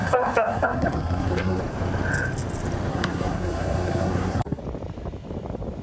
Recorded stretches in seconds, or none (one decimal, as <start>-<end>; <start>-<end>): 1.6-2.9; 4.6-5.8